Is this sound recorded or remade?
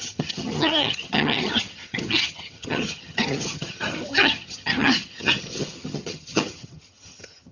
remade